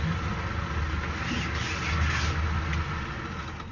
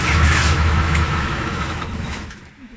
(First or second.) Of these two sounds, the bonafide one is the first